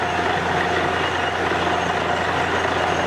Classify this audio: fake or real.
real